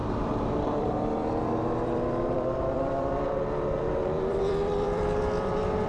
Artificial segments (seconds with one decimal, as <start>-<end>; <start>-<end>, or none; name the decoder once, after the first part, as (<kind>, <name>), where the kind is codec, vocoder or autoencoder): 0.0-5.9 (vocoder, BigVGAN v2)